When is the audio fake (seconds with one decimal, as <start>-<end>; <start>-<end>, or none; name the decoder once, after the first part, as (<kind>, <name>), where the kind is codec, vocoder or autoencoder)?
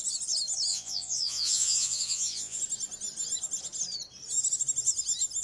0.7-2.6 (vocoder, Vocos)